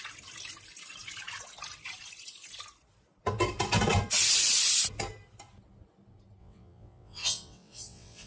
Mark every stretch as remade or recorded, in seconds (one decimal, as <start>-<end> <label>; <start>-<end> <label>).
0.0-6.4 recorded; 6.4-8.3 remade